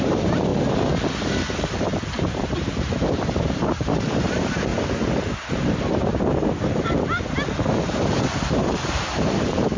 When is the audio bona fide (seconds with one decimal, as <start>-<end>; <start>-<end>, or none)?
0.5-1.5; 1.9-2.4; 4.7-5.5; 6.1-8.7